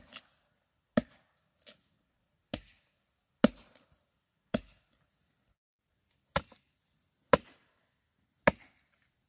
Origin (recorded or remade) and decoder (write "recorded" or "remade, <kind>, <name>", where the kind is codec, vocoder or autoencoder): recorded